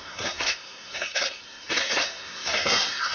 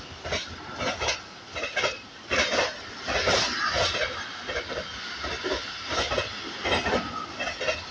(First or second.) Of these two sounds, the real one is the second